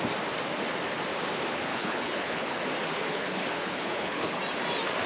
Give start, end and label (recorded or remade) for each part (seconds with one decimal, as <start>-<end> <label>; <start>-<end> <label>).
0.0-1.7 recorded; 1.7-2.6 remade; 2.6-3.0 recorded; 3.0-4.4 remade; 4.4-5.1 recorded